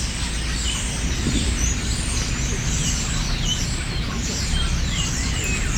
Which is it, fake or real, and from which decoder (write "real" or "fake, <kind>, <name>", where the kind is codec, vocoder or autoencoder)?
real